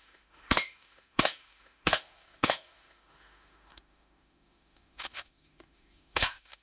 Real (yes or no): no